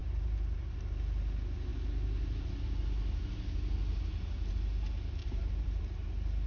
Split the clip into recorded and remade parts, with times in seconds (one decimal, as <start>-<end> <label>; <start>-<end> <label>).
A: 0.0-0.7 remade; 0.7-5.2 recorded; 5.2-5.8 remade; 5.8-6.5 recorded